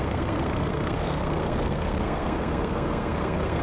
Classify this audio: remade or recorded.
remade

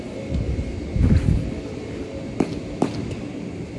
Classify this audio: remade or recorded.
recorded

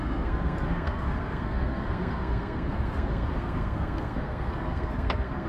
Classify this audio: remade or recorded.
remade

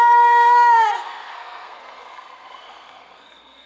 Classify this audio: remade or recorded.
remade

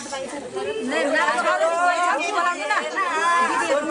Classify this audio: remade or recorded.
recorded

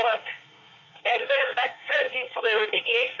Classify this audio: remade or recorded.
remade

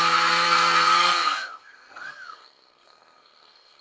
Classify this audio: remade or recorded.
remade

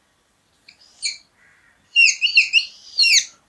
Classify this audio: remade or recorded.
recorded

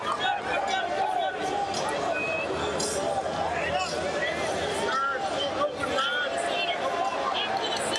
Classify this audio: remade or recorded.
recorded